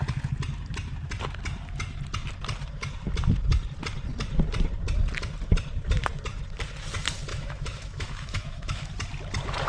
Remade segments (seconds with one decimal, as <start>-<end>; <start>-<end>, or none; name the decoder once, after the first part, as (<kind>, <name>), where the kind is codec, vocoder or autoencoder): 7.3-8.9 (autoencoder, DAC-VAE)